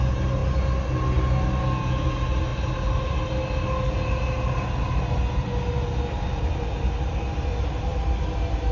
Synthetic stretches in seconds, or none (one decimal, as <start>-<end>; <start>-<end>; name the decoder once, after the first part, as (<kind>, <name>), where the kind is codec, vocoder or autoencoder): none